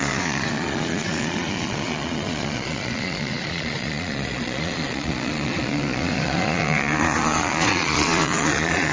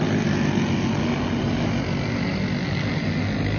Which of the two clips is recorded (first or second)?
second